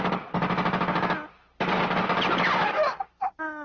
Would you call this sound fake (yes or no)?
no